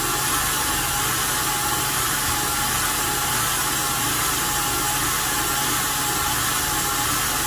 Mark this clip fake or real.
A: real